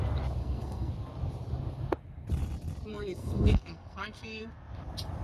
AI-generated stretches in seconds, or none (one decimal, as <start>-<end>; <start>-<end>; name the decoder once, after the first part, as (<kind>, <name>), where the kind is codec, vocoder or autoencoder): 0.4-0.9 (codec, SNAC); 2.9-4.5